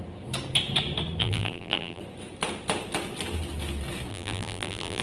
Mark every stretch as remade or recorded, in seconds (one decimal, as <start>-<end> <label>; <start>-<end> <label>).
0.0-1.2 recorded; 1.2-2.0 remade; 2.0-4.1 recorded; 4.1-5.0 remade